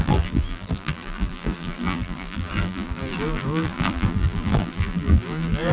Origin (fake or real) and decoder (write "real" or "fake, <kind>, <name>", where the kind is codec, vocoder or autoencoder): fake, vocoder, BigVGAN v2